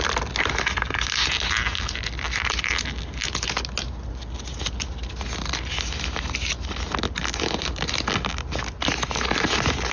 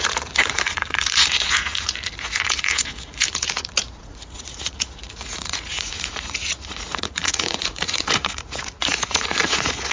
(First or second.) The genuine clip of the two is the first